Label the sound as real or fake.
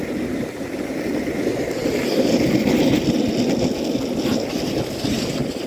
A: real